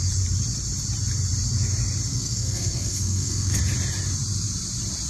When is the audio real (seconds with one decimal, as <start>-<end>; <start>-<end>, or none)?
0.0-2.1; 3.6-5.1

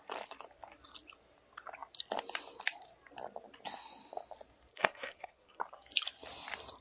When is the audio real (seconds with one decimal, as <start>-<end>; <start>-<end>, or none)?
0.0-4.7; 5.6-6.8

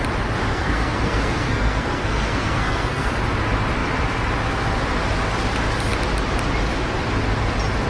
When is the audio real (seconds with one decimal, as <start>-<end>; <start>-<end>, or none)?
0.0-0.5; 3.1-7.9

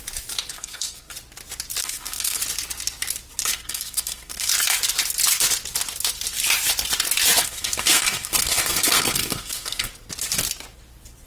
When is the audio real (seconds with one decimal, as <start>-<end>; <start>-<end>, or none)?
0.0-0.5; 1.1-1.8; 2.4-3.5; 4.5-7.4; 9.9-11.3

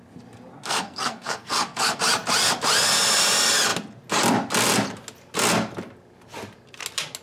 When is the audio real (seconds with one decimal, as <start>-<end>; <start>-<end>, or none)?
0.0-0.6; 2.0-7.2

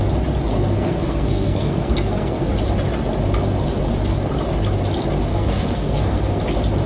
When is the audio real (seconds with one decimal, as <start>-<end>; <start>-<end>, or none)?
0.0-0.5; 2.5-5.3; 6.4-6.9

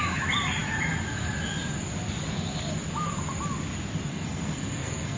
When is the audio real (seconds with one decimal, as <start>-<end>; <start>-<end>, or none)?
0.0-4.1

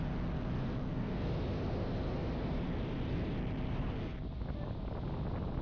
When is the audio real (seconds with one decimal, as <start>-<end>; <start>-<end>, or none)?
0.0-0.8; 1.3-5.6